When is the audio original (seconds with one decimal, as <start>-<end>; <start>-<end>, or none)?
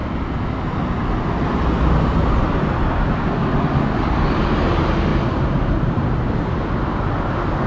0.0-7.7